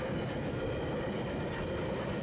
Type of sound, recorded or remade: recorded